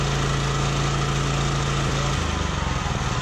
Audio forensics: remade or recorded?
recorded